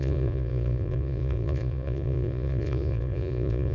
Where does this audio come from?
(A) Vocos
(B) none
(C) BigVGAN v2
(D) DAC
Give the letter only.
A